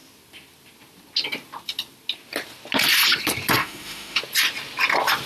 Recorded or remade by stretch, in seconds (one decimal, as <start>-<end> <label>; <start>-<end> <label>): 0.0-3.6 recorded; 3.6-4.2 remade; 4.2-5.3 recorded